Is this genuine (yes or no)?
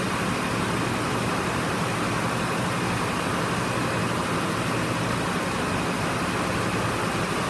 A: yes